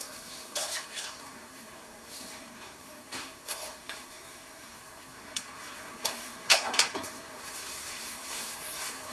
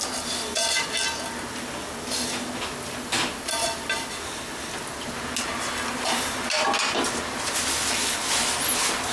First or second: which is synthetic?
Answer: first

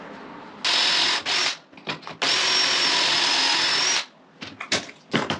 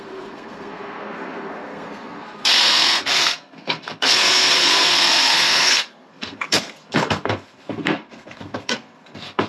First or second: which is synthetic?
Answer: second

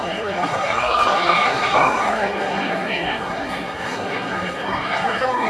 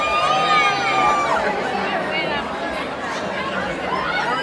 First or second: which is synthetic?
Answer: first